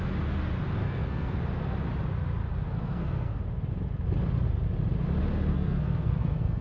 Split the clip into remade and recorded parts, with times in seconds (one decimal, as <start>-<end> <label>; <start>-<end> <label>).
0.0-0.8 recorded; 0.8-1.4 remade; 1.4-2.7 recorded; 2.7-3.4 remade; 3.4-5.5 recorded; 5.5-6.6 remade

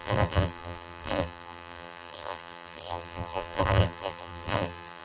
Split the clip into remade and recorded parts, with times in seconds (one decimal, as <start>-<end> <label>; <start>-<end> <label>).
0.0-5.0 remade